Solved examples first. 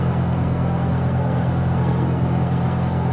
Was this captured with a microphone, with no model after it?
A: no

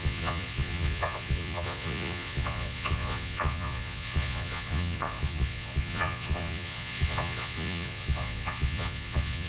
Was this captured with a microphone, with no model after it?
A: no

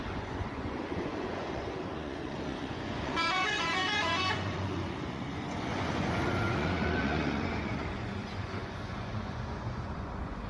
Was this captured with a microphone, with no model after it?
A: no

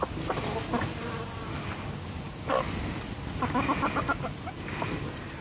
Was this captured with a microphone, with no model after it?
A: yes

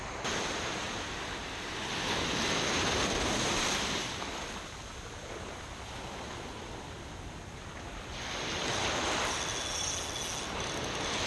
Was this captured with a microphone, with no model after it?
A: yes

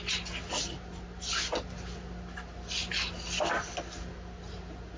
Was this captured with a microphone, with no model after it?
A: yes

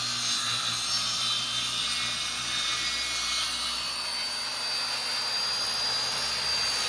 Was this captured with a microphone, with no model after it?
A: yes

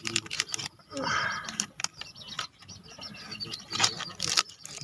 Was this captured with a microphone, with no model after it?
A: yes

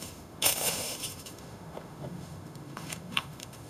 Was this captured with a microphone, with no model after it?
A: no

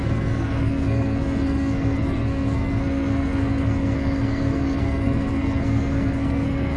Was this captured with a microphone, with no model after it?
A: no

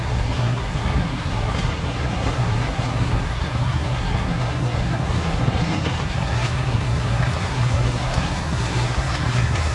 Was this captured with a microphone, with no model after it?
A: no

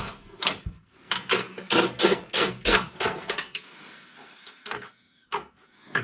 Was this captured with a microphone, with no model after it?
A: no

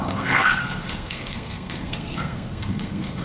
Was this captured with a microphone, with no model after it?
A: no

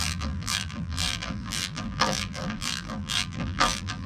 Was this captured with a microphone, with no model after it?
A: no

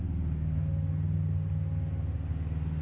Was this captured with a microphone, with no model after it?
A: yes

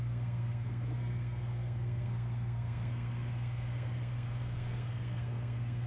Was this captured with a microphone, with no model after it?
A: no